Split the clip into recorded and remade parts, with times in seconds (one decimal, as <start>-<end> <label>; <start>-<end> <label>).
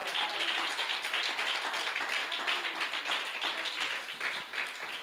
0.0-0.7 remade; 0.7-5.0 recorded